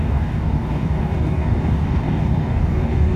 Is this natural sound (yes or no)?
no